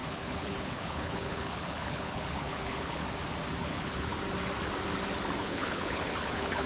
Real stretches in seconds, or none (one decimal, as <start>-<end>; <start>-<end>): 3.0-3.6; 4.1-5.4